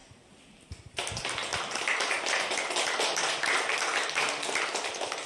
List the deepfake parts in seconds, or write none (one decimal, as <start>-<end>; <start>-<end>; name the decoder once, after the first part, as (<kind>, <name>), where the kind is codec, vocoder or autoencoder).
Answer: none